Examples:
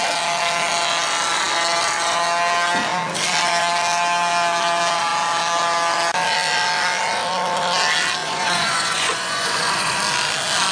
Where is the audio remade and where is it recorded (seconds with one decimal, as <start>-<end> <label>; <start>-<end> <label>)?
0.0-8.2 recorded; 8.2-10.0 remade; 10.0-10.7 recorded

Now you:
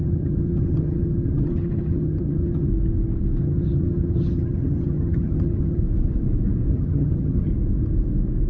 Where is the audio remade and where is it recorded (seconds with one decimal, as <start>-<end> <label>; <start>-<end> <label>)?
0.0-2.7 remade; 2.7-3.4 recorded; 3.4-5.8 remade; 5.8-6.7 recorded; 6.7-7.5 remade; 7.5-8.5 recorded

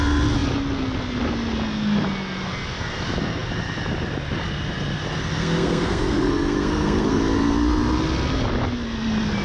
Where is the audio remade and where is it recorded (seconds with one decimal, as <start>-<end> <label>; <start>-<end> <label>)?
0.0-5.2 recorded; 5.2-7.2 remade; 7.2-9.4 recorded

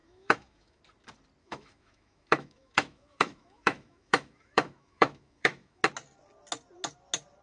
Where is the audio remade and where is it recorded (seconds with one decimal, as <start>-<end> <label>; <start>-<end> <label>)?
0.0-0.8 remade; 0.8-1.4 recorded; 1.4-5.8 remade; 5.8-7.4 recorded